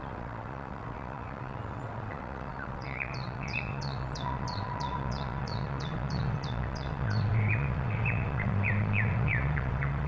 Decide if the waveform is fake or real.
fake